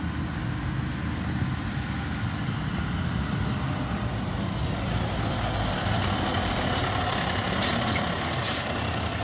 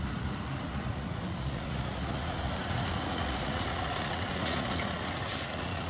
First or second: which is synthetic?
second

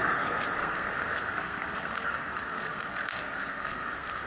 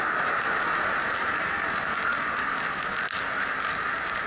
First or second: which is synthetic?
first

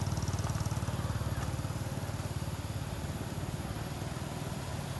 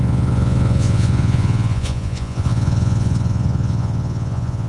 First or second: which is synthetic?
second